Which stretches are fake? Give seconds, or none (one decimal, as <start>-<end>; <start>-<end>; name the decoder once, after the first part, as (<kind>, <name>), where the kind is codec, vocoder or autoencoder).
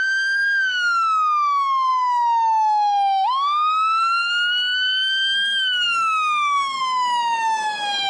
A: 0.0-8.1 (autoencoder, DAC-VAE)